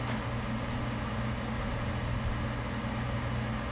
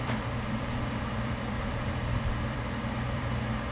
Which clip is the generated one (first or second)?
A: second